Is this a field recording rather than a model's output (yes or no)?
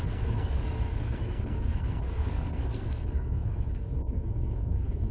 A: no